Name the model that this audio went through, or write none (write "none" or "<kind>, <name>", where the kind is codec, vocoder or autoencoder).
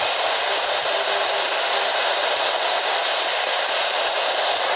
none